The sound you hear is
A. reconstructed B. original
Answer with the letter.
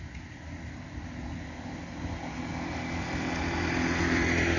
B